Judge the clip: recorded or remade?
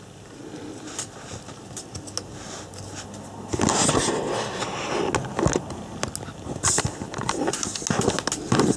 recorded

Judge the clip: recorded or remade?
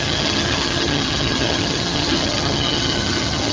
remade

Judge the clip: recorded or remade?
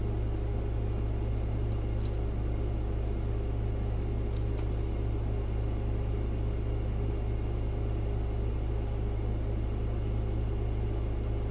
recorded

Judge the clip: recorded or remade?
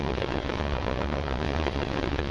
remade